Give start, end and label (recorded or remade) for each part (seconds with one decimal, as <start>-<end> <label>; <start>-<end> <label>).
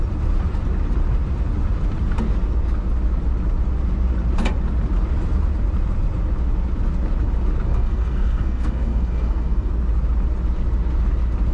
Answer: 0.0-7.7 recorded; 7.7-9.7 remade; 9.7-11.5 recorded